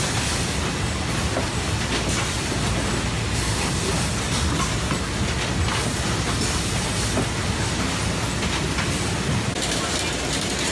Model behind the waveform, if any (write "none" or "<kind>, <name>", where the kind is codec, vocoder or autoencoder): none